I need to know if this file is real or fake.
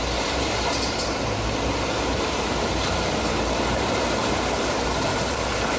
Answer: fake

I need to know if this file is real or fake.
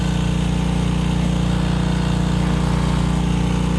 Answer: real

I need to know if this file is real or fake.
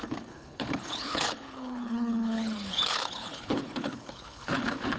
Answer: fake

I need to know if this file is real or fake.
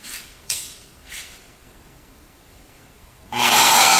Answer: fake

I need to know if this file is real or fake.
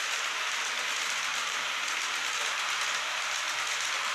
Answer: real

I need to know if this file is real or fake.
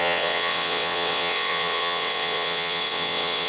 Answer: fake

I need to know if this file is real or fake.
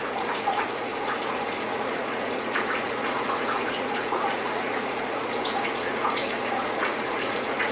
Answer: fake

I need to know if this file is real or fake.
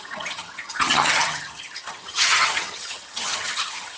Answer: fake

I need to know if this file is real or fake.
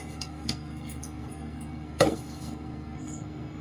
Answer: fake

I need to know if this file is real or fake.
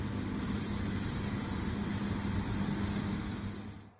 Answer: real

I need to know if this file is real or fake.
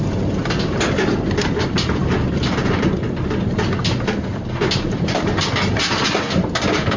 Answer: real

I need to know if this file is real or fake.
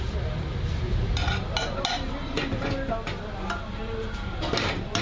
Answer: real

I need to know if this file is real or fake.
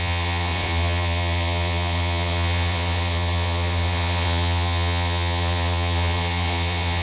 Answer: fake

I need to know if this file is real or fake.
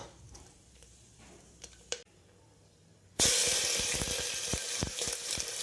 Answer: fake